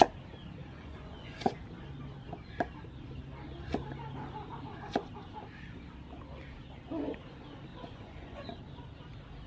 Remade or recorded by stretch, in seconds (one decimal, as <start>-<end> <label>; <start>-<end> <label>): 0.0-0.6 recorded; 0.6-1.6 remade; 1.6-7.7 recorded; 7.7-8.6 remade; 8.6-9.5 recorded